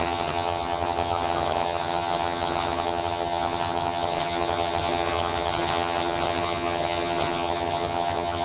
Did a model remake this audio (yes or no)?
yes